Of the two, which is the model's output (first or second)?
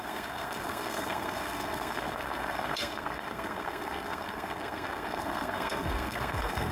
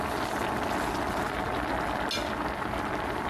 first